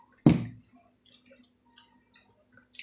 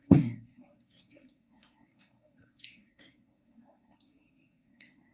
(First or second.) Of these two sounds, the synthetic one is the second